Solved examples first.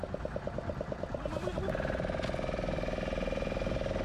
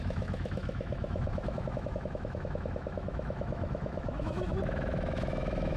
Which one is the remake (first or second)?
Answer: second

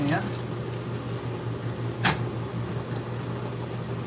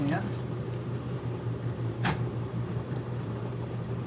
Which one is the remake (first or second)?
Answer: second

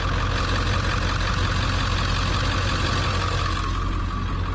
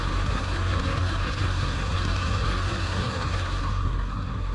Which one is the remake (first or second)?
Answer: second